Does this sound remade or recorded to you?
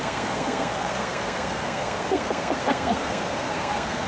remade